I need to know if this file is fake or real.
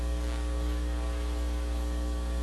fake